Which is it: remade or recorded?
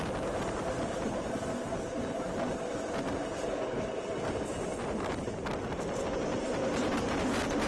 recorded